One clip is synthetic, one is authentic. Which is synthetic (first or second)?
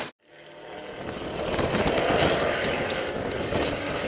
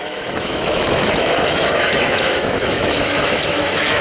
second